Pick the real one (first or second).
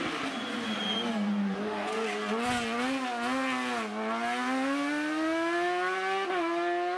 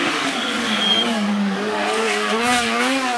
first